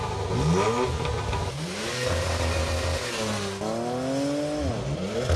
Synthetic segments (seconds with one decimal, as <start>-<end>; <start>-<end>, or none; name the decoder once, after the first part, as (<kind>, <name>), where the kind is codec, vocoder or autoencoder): 1.9-2.6 (codec, DAC)